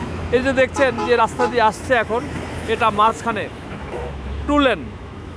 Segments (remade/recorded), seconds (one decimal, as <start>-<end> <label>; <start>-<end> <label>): 0.0-0.4 remade; 0.4-1.2 recorded; 1.2-5.4 remade